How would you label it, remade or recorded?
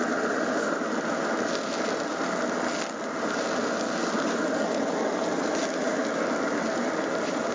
recorded